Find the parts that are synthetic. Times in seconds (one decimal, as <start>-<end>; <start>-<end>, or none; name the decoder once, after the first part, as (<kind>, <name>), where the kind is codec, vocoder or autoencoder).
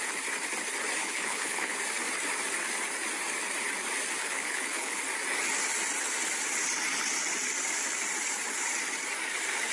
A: 1.0-1.8 (codec, HILCodec); 4.2-5.0